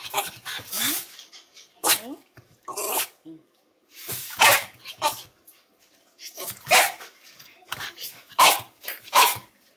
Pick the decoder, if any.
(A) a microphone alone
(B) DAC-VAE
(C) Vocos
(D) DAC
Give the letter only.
D